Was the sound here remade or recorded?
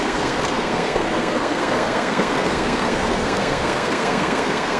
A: remade